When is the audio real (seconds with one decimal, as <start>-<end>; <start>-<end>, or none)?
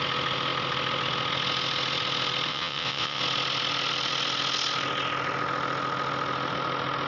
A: 0.0-2.5; 3.2-7.1